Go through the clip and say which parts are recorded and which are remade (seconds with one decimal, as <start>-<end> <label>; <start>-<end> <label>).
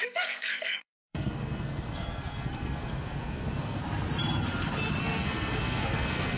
0.0-3.8 remade; 3.8-5.0 recorded; 5.0-6.4 remade